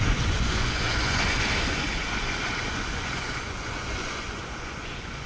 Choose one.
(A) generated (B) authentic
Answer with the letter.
A